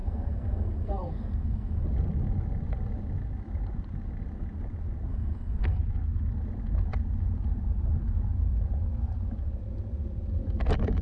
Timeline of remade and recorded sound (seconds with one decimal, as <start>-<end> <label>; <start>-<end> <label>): 0.0-1.8 remade; 1.8-5.1 recorded; 5.1-5.8 remade; 5.8-11.0 recorded